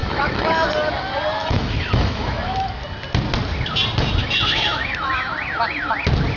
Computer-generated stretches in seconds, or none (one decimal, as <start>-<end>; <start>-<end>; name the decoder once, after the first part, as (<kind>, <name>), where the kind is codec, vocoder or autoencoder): 0.0-0.5 (autoencoder, DAC-VAE); 1.4-2.7; 4.2-5.3